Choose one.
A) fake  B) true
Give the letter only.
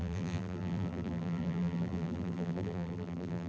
A